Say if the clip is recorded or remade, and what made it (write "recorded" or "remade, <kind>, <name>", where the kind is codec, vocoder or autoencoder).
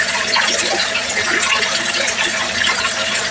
remade, vocoder, Vocos